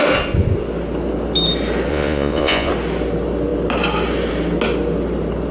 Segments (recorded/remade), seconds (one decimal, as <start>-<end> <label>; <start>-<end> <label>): 0.0-1.9 recorded; 1.9-2.7 remade; 2.7-5.5 recorded